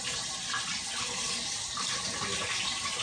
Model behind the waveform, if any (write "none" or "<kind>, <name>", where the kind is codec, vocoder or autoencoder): none